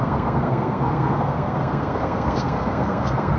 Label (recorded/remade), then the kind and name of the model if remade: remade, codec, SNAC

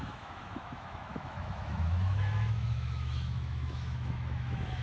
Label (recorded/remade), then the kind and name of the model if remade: remade, autoencoder, DAC-VAE